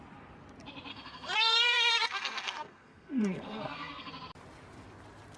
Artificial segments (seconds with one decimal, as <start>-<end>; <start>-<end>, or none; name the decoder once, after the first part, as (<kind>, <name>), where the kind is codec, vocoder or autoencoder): 0.9-4.1 (codec, SNAC)